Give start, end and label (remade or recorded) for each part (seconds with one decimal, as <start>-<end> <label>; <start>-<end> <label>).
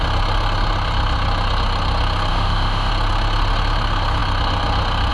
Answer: 0.0-2.3 recorded; 2.3-2.9 remade; 2.9-5.1 recorded